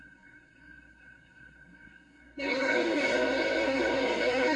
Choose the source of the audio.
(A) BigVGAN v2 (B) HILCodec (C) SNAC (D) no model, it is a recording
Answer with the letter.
C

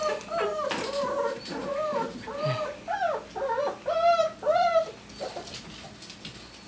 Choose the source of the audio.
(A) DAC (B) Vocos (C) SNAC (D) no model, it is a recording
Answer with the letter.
D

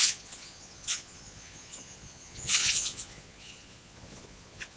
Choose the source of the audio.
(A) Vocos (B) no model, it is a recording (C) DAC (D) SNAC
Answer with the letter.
A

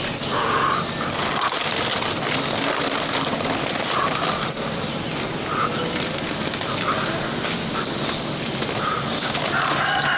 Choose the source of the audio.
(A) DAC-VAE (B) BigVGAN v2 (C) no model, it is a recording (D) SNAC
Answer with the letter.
C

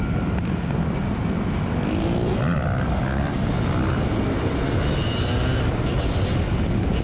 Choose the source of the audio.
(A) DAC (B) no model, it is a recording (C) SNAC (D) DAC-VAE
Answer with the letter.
B